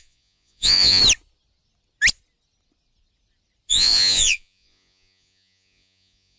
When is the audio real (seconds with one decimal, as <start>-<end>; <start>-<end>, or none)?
1.0-3.7